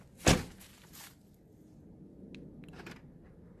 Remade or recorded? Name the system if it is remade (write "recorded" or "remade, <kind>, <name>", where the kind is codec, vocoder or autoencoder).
recorded